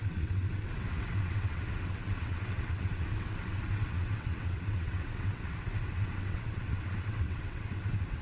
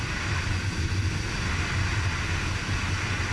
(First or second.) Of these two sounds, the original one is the second